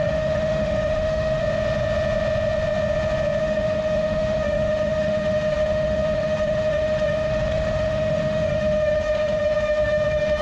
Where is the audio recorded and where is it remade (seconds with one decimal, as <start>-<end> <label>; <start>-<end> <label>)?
0.0-1.4 remade; 1.4-3.4 recorded; 3.4-10.4 remade